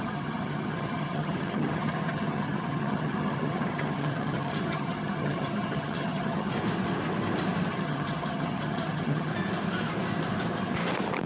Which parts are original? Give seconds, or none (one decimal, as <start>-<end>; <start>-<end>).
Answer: 6.5-7.7; 9.3-11.3